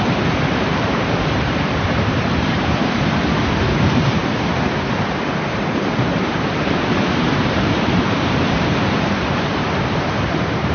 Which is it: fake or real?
fake